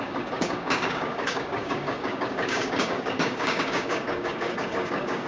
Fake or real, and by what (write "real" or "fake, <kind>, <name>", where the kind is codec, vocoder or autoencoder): fake, codec, DAC